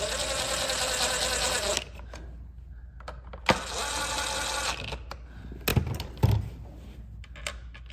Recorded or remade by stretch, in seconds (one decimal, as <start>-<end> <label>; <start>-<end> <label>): 0.0-7.9 recorded